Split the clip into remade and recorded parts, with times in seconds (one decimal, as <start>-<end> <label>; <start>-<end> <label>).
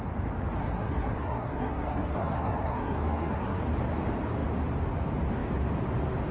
0.0-0.6 recorded; 0.6-3.6 remade; 3.6-6.3 recorded